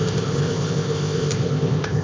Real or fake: fake